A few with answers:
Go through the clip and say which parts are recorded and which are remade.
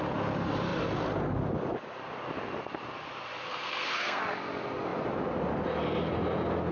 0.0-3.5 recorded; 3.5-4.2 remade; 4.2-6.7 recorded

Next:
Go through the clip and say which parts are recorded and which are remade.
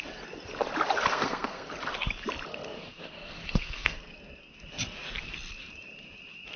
0.0-1.1 recorded; 1.1-1.7 remade; 1.7-2.5 recorded; 2.5-4.2 remade; 4.2-6.6 recorded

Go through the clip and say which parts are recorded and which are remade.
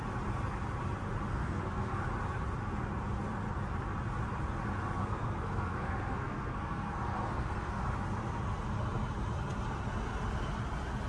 0.0-1.3 recorded; 1.3-2.0 remade; 2.0-5.0 recorded; 5.0-7.8 remade; 7.8-11.1 recorded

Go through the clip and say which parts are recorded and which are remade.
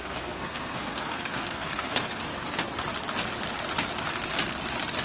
0.0-2.3 remade; 2.3-5.0 recorded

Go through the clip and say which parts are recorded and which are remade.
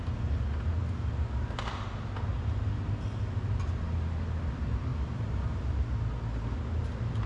0.0-7.3 recorded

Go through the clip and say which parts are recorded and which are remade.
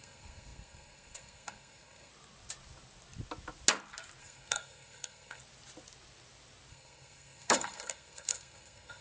0.0-2.1 remade; 2.1-4.2 recorded; 4.2-5.4 remade; 5.4-6.7 recorded; 6.7-9.0 remade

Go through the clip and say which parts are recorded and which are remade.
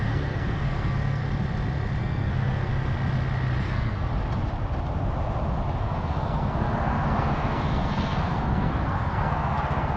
0.0-1.2 remade; 1.2-2.0 recorded; 2.0-2.7 remade; 2.7-3.6 recorded; 3.6-4.1 remade; 4.1-5.8 recorded; 5.8-10.0 remade